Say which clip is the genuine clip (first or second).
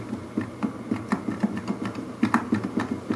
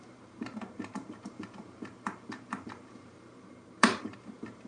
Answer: first